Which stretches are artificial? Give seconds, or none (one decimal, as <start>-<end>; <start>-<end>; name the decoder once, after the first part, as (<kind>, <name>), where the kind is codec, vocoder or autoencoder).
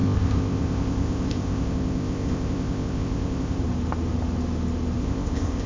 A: 0.0-3.6 (codec, ZipCodec); 5.0-5.7